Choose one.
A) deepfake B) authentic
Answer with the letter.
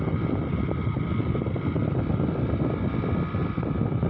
A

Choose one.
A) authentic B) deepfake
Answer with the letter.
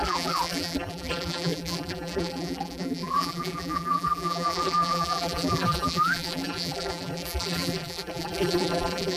B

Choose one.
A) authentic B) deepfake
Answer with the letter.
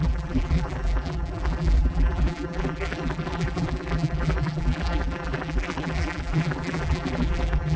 B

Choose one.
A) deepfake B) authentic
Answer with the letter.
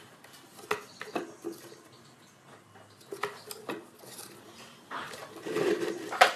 B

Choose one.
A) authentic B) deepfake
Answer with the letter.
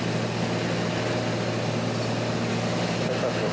A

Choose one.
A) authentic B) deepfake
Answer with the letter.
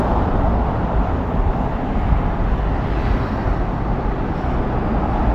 A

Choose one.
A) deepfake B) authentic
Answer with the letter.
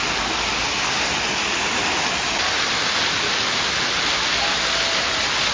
B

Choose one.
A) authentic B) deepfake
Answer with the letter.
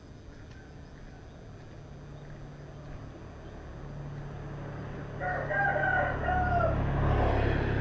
A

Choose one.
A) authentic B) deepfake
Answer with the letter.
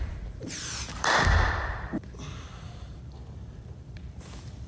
B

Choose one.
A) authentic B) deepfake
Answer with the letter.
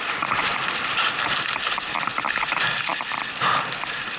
A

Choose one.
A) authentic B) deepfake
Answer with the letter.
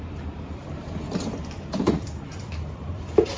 B